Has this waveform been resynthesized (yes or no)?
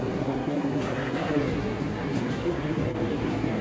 yes